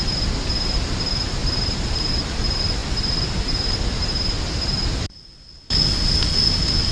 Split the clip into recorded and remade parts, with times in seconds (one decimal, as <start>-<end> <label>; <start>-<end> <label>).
0.0-6.9 recorded